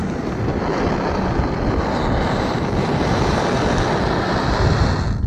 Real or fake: real